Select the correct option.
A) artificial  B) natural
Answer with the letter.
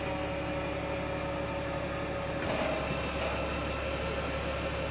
B